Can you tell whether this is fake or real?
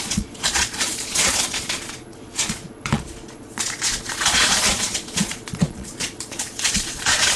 fake